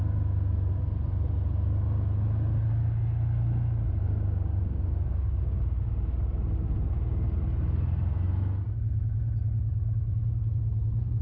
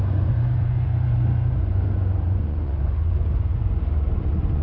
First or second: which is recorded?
first